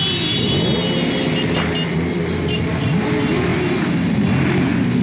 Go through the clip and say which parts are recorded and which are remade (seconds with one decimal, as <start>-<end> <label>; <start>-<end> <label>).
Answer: 0.0-5.0 recorded